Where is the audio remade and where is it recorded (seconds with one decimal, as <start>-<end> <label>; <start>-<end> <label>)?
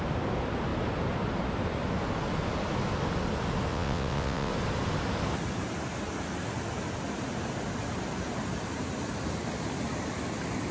0.0-3.7 recorded; 3.7-4.5 remade; 4.5-10.7 recorded